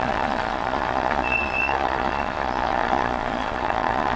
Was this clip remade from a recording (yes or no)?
yes